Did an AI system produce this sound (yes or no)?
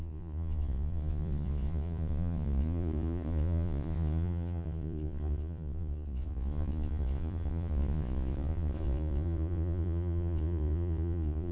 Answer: yes